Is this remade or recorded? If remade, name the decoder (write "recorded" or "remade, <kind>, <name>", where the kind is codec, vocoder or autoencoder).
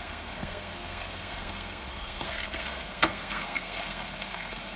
remade, codec, SNAC